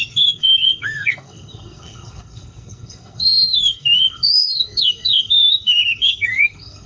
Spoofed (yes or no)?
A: yes